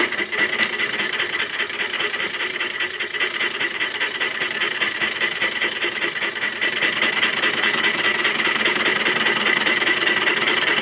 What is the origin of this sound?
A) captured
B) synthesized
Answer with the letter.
B